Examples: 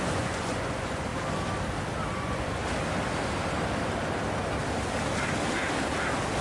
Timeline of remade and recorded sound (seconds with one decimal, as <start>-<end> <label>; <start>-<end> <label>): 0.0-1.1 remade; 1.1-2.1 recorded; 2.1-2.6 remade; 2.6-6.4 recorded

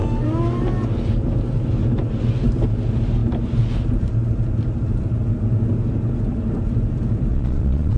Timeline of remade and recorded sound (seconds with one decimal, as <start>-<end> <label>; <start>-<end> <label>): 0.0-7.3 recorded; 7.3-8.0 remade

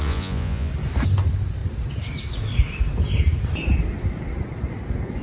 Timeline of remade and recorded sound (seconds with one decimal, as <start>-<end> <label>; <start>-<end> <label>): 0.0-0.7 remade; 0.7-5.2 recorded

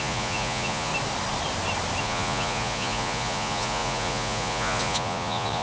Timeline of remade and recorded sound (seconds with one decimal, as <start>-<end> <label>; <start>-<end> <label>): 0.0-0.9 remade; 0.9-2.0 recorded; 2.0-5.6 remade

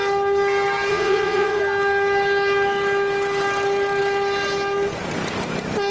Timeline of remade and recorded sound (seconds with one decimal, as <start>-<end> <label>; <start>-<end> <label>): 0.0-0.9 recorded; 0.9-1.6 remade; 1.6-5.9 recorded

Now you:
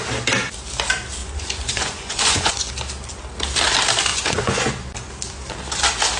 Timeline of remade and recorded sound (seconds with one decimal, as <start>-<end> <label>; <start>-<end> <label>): 0.0-1.2 recorded; 1.2-2.7 remade; 2.7-4.1 recorded; 4.1-4.7 remade; 4.7-6.2 recorded